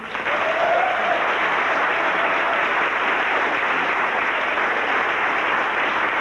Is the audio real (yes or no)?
yes